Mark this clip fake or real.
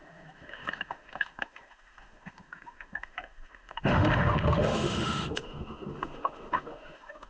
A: fake